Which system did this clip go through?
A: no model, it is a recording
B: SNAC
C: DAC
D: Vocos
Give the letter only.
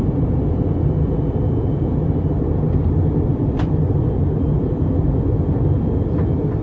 A